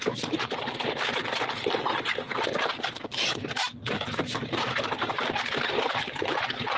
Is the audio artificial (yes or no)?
no